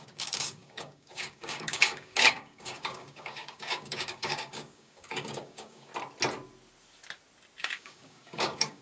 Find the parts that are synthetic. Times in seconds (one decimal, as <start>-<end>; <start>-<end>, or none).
0.0-5.9; 7.6-8.8